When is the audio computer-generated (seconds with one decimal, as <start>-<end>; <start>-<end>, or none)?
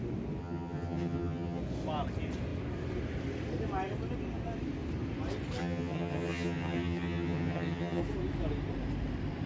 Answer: 0.4-1.6; 5.6-8.0